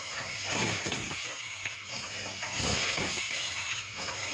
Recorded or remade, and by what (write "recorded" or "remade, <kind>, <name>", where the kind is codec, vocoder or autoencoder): remade, codec, SNAC